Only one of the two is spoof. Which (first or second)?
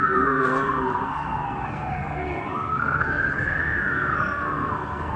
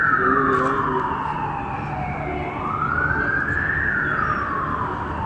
first